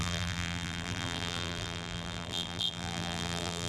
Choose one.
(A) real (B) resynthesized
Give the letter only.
B